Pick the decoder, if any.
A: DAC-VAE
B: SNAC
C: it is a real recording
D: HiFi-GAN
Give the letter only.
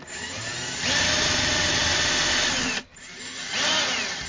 C